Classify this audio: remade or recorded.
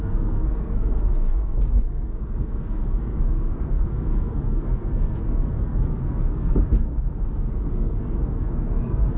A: remade